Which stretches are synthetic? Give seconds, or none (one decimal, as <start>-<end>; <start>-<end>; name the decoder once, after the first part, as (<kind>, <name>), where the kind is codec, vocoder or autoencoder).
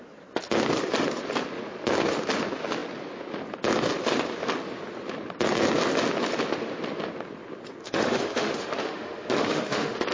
7.8-10.1 (autoencoder, DAC-VAE)